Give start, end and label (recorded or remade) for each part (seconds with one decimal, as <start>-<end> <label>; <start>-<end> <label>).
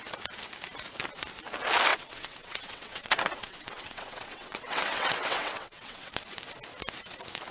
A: 0.0-1.9 recorded; 1.9-6.1 remade; 6.1-7.5 recorded